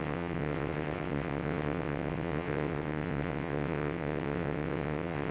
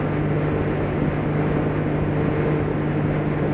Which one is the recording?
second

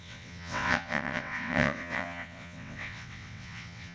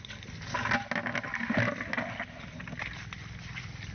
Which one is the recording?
second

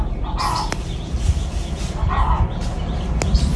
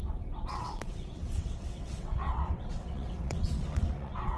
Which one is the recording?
first